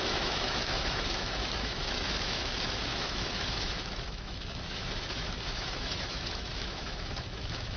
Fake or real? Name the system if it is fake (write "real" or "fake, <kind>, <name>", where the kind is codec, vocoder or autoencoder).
fake, autoencoder, DAC-VAE